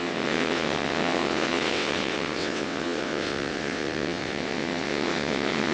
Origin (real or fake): fake